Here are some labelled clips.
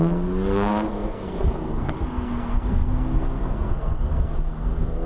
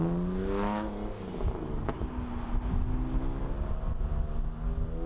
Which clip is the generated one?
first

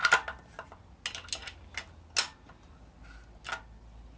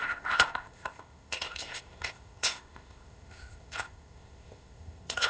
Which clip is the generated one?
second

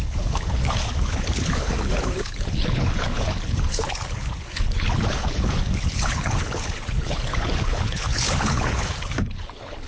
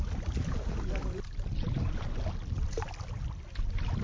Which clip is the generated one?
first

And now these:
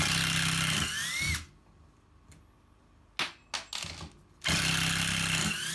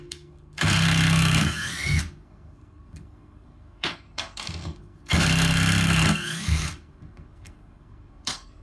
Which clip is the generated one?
second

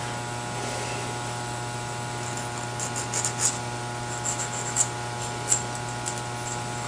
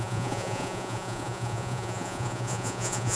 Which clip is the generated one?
second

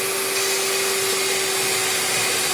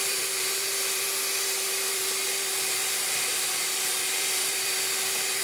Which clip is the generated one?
second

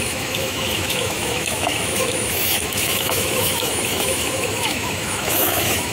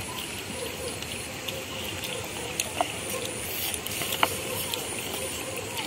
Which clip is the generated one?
first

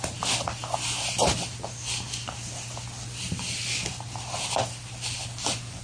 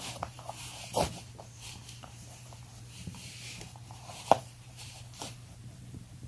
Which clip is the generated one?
second